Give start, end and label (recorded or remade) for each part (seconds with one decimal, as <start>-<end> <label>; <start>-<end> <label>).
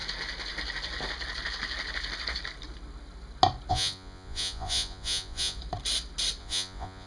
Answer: 0.0-3.7 recorded; 3.7-5.6 remade; 5.6-6.4 recorded; 6.4-7.1 remade